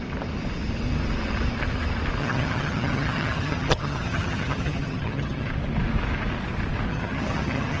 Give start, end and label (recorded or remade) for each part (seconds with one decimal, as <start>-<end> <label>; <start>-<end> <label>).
0.0-2.2 recorded; 2.2-5.5 remade; 5.5-6.9 recorded; 6.9-7.8 remade